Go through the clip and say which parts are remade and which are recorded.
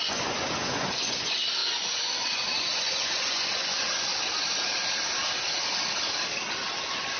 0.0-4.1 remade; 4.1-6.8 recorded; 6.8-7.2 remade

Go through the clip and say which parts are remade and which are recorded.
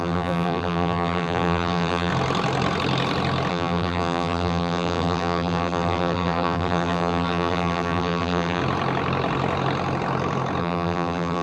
0.0-2.1 remade; 2.1-3.5 recorded; 3.5-8.6 remade; 8.6-10.6 recorded; 10.6-11.4 remade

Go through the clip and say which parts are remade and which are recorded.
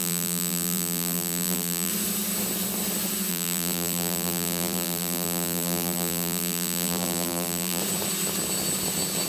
0.0-1.9 remade; 1.9-3.3 recorded; 3.3-7.8 remade; 7.8-9.3 recorded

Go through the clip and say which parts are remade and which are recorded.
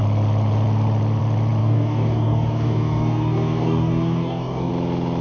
0.0-1.6 recorded; 1.6-4.7 remade; 4.7-5.2 recorded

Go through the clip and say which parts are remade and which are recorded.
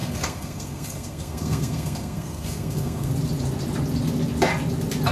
0.0-3.1 remade; 3.1-5.1 recorded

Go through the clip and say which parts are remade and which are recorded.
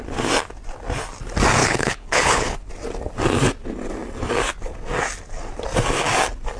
0.0-1.6 recorded; 1.6-2.7 remade; 2.7-6.6 recorded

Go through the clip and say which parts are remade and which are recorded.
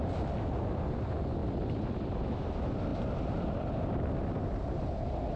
0.0-5.4 recorded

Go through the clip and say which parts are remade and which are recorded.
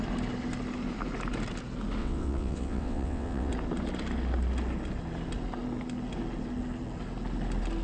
0.0-2.0 recorded; 2.0-3.5 remade; 3.5-7.8 recorded